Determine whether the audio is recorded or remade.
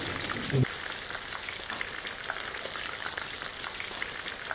recorded